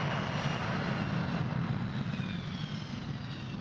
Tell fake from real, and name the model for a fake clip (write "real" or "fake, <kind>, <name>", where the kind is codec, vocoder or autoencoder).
real